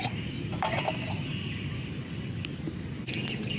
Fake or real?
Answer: real